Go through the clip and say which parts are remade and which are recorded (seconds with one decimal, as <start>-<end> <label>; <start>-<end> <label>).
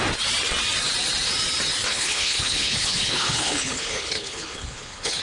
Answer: 0.0-1.9 recorded; 1.9-5.2 remade